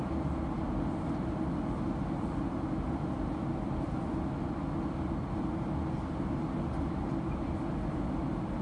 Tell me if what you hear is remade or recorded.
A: recorded